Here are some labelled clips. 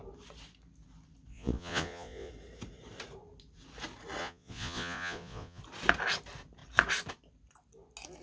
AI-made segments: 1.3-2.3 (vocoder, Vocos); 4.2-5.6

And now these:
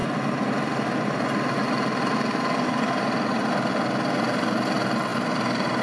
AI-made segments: none

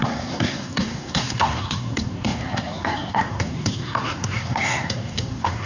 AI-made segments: 0.0-5.7 (codec, SNAC)

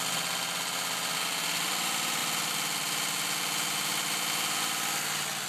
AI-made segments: none

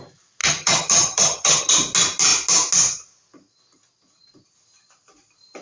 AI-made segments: 0.4-1.7 (vocoder, HiFi-GAN)

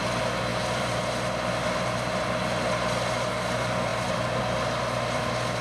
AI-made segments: 0.5-1.1 (vocoder, BigVGAN v2); 3.9-4.4